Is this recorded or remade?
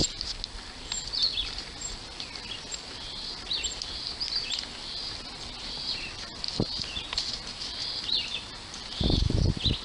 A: recorded